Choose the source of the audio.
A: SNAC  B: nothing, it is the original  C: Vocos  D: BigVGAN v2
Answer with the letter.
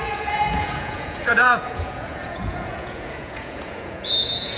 C